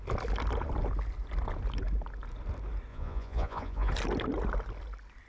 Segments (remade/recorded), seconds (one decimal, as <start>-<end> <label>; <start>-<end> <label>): 0.0-2.9 recorded; 2.9-3.9 remade; 3.9-5.3 recorded

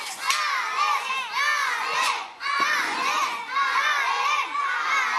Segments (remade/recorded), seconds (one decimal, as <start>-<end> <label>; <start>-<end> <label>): 0.0-1.6 recorded; 1.6-4.7 remade; 4.7-5.2 recorded

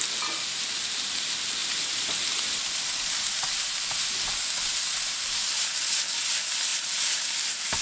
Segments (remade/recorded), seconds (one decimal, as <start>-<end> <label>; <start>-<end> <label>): 0.0-1.6 recorded; 1.6-6.3 remade; 6.3-6.7 recorded; 6.7-7.3 remade; 7.3-7.8 recorded

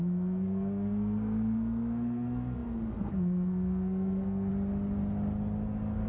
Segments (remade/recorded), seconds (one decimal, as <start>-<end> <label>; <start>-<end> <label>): 0.0-4.5 remade; 4.5-6.1 recorded

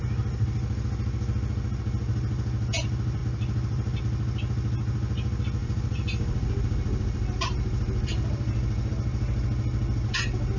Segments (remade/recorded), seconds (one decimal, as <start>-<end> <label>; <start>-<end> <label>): 0.0-5.6 recorded; 5.6-8.9 remade; 8.9-10.6 recorded

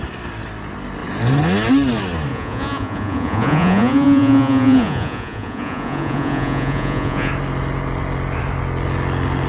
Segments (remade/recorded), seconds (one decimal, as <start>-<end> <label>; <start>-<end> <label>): 0.0-2.3 recorded; 2.3-7.3 remade; 7.3-9.5 recorded